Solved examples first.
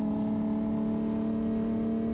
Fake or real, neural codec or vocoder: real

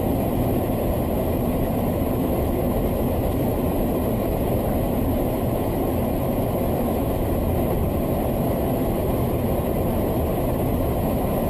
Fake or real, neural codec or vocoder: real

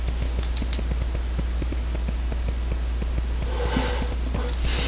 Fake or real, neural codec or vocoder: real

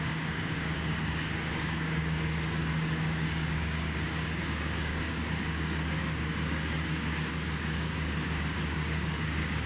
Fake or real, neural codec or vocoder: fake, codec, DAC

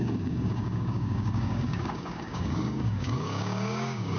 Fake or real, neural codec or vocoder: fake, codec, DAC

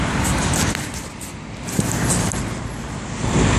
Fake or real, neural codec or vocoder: real